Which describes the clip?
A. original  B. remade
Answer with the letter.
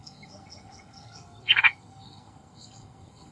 B